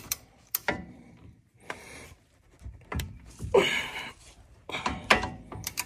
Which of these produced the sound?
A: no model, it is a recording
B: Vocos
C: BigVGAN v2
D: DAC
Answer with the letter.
C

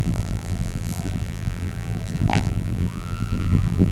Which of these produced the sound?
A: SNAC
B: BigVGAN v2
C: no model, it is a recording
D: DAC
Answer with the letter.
B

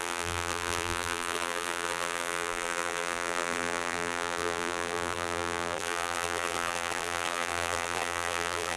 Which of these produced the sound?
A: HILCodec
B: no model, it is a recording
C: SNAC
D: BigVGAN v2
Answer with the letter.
D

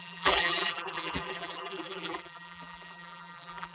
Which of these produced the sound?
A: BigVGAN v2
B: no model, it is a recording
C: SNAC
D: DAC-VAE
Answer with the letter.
A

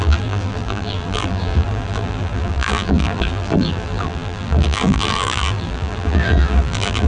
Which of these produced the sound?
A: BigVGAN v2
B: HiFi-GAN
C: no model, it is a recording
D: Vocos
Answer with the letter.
A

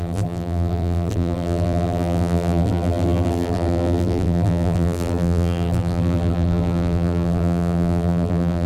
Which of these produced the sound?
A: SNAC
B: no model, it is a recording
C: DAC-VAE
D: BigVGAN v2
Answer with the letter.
D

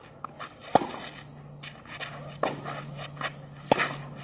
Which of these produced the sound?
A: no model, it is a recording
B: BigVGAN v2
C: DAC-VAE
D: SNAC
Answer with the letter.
A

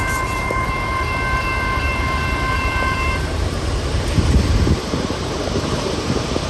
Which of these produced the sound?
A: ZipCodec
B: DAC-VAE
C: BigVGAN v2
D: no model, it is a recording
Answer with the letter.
C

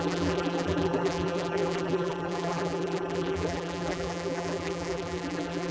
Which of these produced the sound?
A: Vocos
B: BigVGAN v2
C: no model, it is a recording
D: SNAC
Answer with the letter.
B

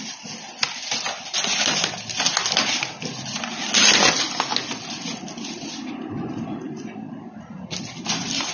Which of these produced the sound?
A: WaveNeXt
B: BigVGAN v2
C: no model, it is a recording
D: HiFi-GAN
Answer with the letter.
C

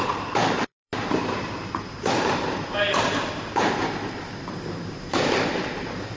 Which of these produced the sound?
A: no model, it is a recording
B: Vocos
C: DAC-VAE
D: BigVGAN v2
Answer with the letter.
D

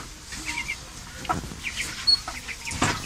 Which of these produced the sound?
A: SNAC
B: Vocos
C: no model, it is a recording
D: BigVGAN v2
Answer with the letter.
C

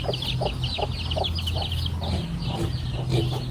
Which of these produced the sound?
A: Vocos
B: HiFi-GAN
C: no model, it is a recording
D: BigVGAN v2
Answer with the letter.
C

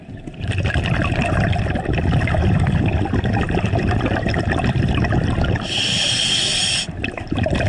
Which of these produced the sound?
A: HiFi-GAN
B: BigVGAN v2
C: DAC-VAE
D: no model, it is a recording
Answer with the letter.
D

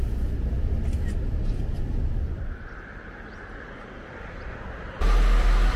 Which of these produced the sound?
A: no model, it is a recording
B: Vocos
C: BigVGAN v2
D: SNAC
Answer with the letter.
C